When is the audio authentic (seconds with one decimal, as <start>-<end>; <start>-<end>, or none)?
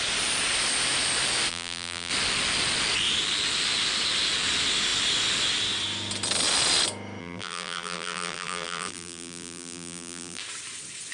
0.0-1.5; 2.1-7.2; 10.4-11.1